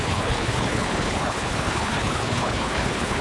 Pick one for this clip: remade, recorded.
remade